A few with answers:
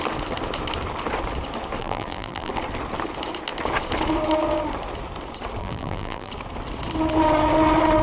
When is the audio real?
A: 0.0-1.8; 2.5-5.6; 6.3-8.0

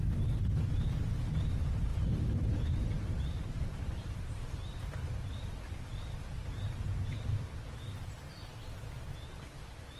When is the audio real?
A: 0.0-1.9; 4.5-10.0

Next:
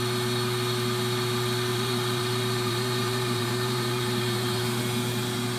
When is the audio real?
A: 0.0-1.7; 4.8-5.6

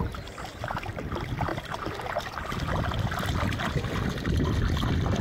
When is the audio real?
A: 0.0-0.5; 1.0-5.2

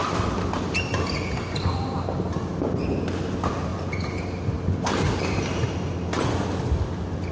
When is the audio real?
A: 0.0-7.3

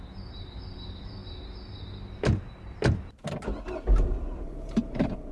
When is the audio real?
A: 1.2-4.4